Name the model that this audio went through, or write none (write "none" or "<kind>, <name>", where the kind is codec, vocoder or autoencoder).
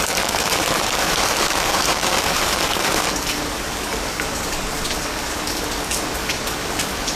codec, DAC